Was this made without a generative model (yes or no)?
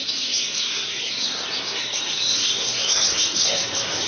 no